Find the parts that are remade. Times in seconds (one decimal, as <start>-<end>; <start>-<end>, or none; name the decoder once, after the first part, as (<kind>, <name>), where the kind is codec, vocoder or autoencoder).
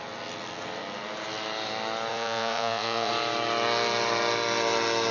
2.1-3.1 (vocoder, Vocos)